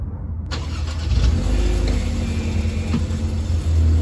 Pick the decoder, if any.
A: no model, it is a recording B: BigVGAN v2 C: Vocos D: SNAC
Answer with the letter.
A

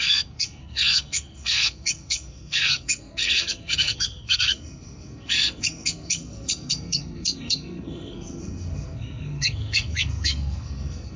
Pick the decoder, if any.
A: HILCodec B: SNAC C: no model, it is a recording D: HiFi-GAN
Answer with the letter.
B